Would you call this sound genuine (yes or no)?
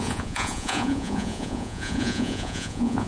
no